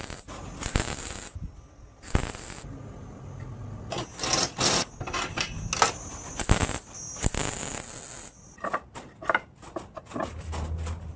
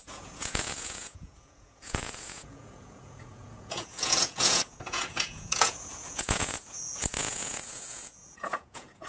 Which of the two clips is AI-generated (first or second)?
second